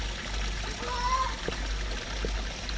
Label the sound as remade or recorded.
recorded